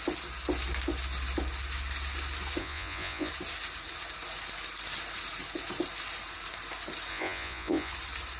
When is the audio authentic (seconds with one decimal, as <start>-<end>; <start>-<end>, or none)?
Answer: 0.0-2.6; 3.3-7.1; 7.9-8.4